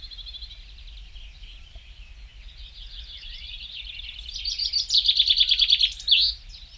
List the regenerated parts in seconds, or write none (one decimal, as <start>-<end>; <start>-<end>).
none